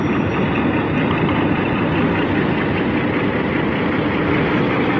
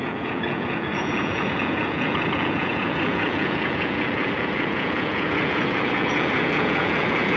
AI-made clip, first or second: second